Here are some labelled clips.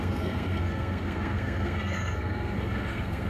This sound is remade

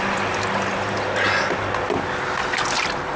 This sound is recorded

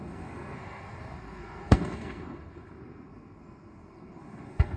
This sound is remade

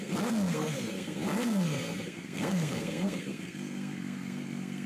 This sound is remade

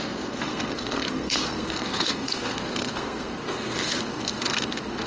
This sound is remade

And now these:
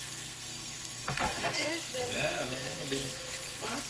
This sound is remade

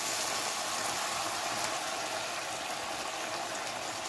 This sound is recorded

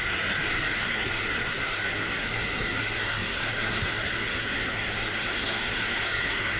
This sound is remade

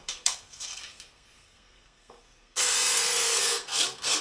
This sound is remade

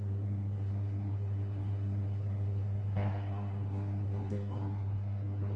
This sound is remade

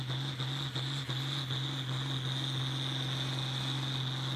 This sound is recorded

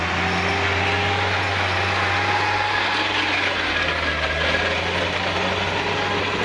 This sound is recorded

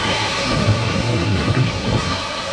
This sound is remade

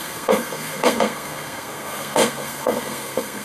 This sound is remade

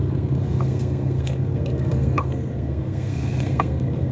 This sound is remade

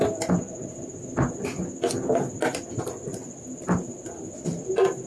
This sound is recorded